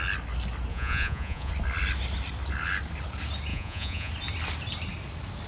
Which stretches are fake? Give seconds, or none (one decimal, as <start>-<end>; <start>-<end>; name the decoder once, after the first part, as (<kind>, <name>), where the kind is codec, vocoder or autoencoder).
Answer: 0.7-1.5 (vocoder, Vocos); 3.5-4.1